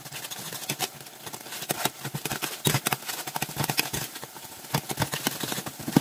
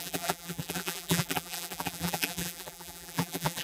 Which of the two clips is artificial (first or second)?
second